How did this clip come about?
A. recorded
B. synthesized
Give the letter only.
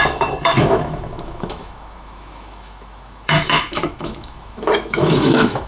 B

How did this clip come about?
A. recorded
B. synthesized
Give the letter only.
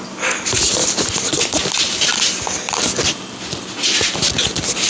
A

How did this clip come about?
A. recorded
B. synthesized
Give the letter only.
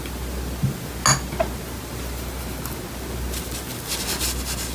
A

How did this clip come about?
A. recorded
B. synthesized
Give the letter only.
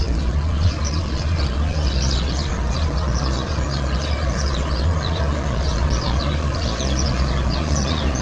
B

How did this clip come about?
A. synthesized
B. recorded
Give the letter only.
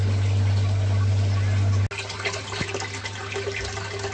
B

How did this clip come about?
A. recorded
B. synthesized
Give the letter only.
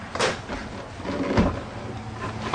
A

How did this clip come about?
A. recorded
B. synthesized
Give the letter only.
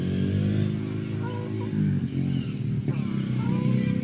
A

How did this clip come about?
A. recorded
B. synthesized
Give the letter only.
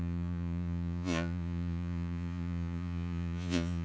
B